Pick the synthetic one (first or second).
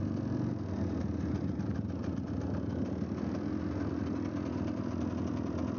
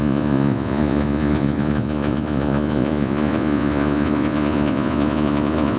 second